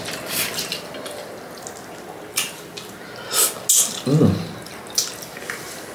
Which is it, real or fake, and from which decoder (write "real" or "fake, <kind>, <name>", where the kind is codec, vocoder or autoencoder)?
real